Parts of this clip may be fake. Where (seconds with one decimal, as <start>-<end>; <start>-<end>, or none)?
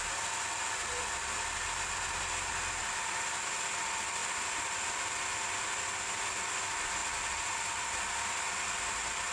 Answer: none